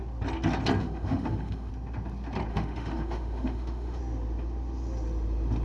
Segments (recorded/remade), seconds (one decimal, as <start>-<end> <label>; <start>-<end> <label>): 0.0-0.8 recorded; 0.8-1.7 remade; 1.7-2.5 recorded; 2.5-4.0 remade; 4.0-5.6 recorded